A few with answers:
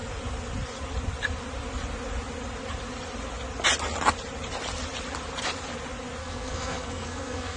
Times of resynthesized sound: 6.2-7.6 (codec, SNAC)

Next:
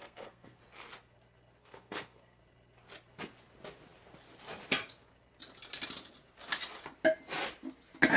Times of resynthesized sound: 0.0-0.6 (codec, SNAC); 1.6-2.4

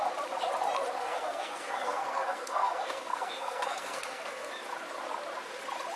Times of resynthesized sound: 1.0-4.5 (codec, SNAC)

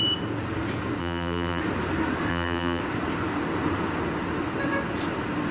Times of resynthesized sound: 1.0-1.6 (vocoder, BigVGAN v2); 2.3-2.8

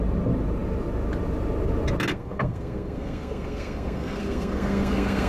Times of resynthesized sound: 2.1-5.3 (codec, SNAC)

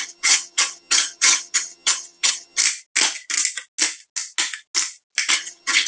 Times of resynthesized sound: 0.0-2.6 (vocoder, HiFi-GAN); 5.3-5.9